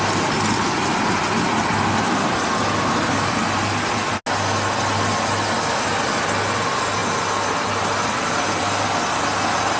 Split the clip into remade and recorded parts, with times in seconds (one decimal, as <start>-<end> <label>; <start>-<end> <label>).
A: 0.0-9.8 recorded

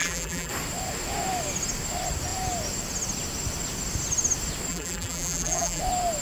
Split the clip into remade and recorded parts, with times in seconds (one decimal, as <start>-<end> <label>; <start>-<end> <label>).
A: 0.0-0.5 remade; 0.5-4.7 recorded; 4.7-5.8 remade; 5.8-6.2 recorded

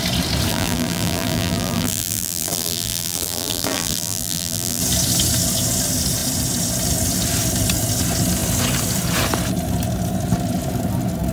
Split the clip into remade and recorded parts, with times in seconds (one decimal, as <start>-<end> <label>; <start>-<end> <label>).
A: 0.0-0.5 recorded; 0.5-4.8 remade; 4.8-11.3 recorded

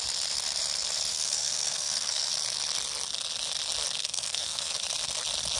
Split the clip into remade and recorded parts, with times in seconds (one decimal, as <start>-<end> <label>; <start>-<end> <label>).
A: 0.0-1.1 recorded; 1.1-2.3 remade; 2.3-4.0 recorded; 4.0-4.7 remade; 4.7-5.6 recorded

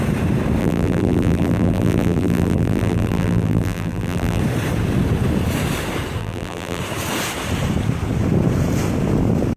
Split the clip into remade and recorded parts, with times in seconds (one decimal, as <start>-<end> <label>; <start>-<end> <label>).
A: 0.0-0.6 recorded; 0.6-4.4 remade; 4.4-6.2 recorded; 6.2-6.8 remade; 6.8-9.6 recorded

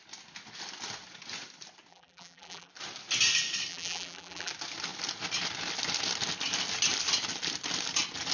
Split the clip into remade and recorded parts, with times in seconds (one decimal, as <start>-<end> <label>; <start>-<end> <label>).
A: 0.0-1.9 recorded; 1.9-2.7 remade; 2.7-3.7 recorded; 3.7-4.5 remade; 4.5-8.3 recorded